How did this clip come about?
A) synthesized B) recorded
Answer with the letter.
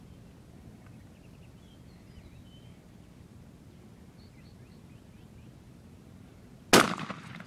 B